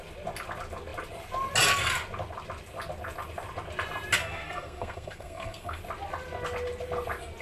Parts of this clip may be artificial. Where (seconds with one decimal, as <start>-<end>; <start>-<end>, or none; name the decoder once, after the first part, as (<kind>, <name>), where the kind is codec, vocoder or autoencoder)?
4.2-5.8 (codec, SNAC)

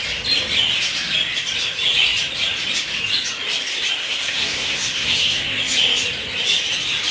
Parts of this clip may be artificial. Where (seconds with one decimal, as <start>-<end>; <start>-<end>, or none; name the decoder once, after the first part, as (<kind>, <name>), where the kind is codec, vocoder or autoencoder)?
4.0-5.5 (codec, SNAC)

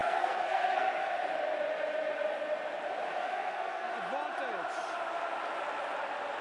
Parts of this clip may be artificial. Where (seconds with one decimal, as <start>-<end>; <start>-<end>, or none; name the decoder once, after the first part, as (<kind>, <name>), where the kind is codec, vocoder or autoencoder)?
0.0-1.2 (codec, SNAC); 3.2-3.9

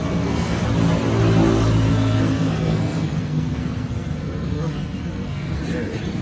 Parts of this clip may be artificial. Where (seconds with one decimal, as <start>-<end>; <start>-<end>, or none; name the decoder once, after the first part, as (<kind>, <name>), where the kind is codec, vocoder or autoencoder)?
0.0-0.6 (codec, SNAC); 1.9-5.6

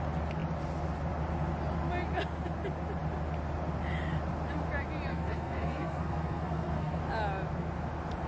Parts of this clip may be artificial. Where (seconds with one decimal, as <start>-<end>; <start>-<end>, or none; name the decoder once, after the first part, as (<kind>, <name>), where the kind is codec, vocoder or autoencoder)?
5.1-7.0 (codec, SNAC)

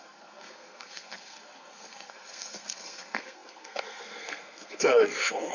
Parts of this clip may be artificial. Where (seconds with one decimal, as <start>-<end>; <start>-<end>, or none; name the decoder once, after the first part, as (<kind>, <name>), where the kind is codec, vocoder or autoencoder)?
0.0-5.5 (codec, SNAC)